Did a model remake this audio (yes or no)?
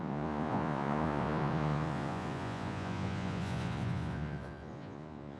yes